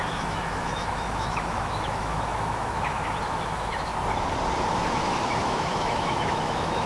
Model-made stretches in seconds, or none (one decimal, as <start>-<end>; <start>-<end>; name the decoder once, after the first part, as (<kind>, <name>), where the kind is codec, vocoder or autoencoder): 0.0-3.9 (autoencoder, DAC-VAE); 4.9-6.9